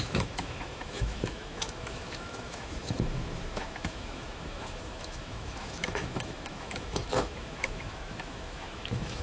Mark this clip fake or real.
fake